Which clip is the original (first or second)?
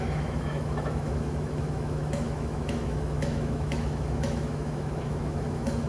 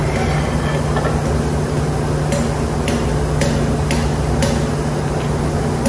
second